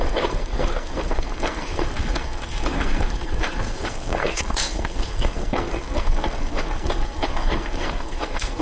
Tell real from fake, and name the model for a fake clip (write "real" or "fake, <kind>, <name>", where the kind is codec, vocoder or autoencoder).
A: fake, codec, SNAC